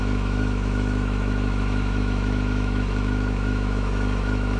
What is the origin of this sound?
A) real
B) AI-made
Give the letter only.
B